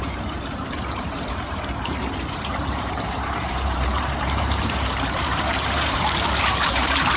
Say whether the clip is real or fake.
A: fake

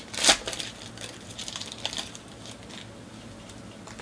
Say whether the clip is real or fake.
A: real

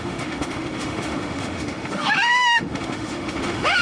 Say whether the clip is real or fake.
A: fake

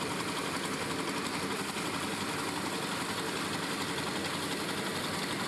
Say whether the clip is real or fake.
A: real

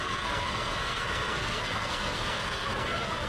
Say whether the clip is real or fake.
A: fake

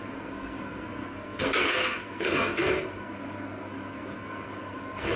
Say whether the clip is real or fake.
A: fake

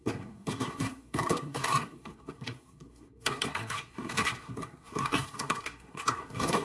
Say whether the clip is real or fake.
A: fake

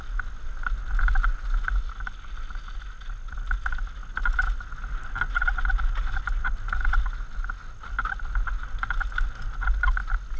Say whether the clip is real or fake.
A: real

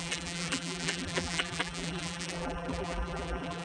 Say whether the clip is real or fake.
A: fake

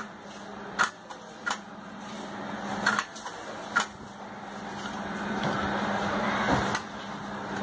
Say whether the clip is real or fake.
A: real